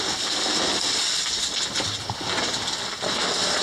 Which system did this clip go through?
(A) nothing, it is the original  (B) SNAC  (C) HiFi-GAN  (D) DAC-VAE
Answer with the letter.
A